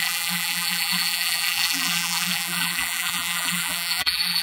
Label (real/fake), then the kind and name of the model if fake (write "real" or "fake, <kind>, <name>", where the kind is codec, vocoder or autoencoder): fake, vocoder, BigVGAN v2